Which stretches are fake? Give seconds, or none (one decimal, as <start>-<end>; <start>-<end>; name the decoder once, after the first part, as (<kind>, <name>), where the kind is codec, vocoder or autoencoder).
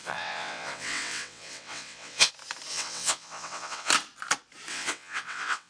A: 0.0-2.3 (vocoder, WaveNeXt); 2.7-3.9; 4.7-5.7